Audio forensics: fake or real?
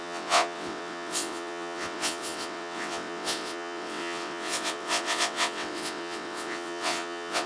fake